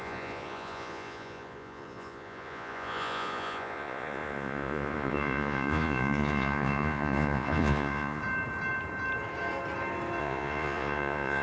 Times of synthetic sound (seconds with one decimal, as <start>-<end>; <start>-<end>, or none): 0.0-8.2; 10.2-11.4